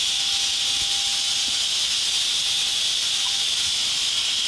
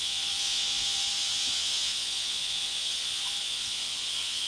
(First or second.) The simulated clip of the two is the second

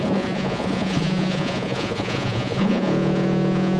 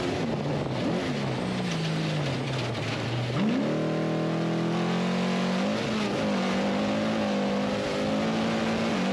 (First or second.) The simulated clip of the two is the first